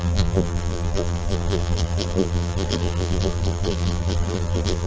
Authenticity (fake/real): fake